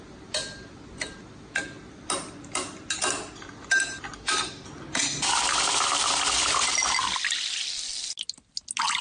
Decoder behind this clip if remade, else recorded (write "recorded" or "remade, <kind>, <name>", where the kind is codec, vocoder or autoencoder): recorded